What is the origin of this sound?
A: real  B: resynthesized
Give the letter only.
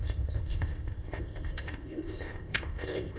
B